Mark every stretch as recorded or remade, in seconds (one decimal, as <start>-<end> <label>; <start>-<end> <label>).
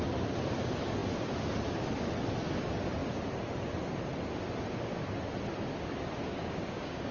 0.0-6.3 recorded; 6.3-7.1 remade